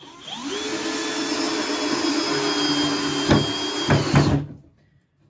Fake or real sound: real